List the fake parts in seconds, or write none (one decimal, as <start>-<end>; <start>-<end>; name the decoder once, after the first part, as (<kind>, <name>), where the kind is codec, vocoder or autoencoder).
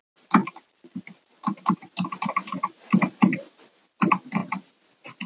0.4-3.6 (vocoder, BigVGAN v2)